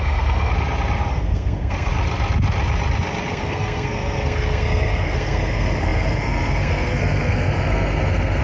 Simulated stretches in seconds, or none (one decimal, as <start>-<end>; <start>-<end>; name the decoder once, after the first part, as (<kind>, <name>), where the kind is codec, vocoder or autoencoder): 0.0-0.5 (codec, SNAC); 1.1-1.9; 3.3-8.4